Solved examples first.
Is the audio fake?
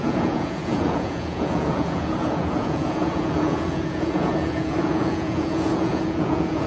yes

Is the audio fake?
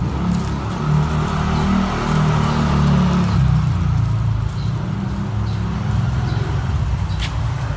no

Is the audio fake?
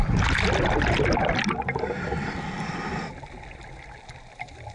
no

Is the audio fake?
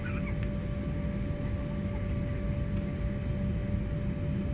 no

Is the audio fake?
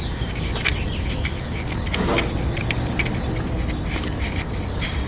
no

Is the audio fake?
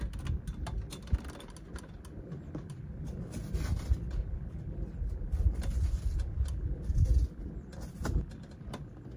no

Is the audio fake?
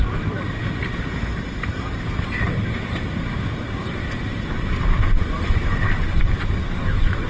yes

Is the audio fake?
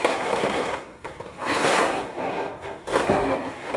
yes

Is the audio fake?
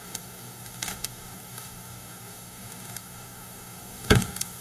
yes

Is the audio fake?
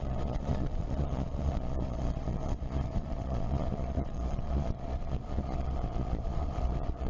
yes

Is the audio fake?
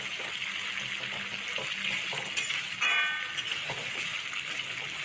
no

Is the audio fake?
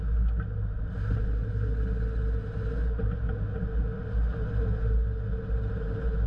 no